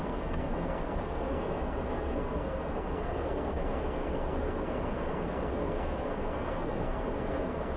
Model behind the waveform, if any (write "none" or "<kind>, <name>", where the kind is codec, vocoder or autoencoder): codec, SNAC